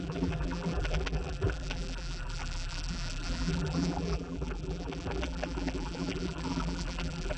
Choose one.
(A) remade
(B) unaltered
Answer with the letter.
A